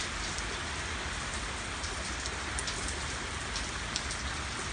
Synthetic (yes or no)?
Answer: no